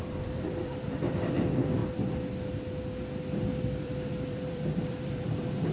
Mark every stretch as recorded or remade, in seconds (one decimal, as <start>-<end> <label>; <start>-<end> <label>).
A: 0.0-1.8 remade; 1.8-3.8 recorded; 3.8-5.7 remade